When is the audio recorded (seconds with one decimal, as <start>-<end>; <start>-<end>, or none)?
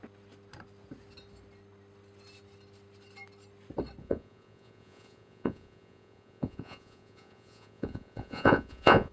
0.0-4.0